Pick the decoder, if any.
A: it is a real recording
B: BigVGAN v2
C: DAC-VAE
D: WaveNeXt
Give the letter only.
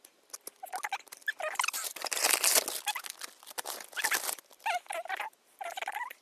A